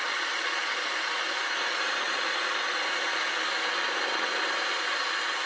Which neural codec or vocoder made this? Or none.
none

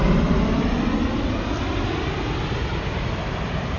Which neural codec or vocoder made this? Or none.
none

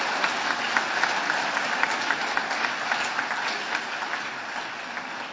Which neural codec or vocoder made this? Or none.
none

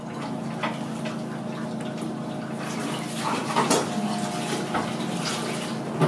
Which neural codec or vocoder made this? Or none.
none